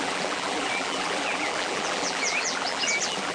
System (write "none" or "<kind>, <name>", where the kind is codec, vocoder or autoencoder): vocoder, BigVGAN v2